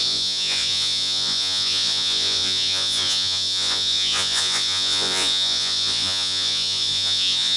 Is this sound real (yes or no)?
no